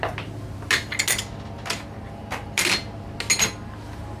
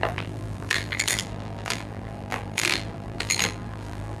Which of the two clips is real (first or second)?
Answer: first